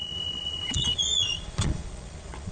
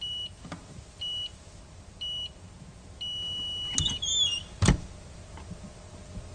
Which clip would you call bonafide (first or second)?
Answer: second